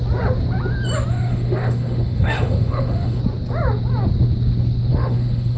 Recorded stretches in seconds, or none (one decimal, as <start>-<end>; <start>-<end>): 0.0-1.1; 3.2-4.9